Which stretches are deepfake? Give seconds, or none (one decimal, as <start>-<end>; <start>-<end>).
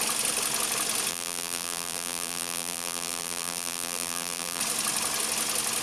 1.1-4.6